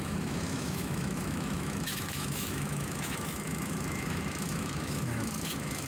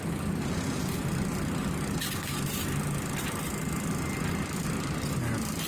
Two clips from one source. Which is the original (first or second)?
second